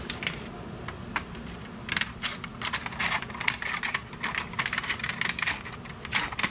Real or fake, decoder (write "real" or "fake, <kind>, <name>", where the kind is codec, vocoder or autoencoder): real